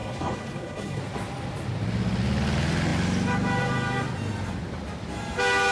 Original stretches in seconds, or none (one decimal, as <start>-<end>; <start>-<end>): 1.0-5.7